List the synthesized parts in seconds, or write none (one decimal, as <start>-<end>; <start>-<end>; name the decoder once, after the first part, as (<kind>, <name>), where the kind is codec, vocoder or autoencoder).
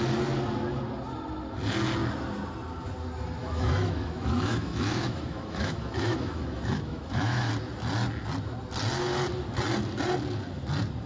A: 3.4-7.5 (autoencoder, DAC-VAE)